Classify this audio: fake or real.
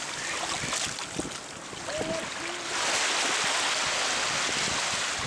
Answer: real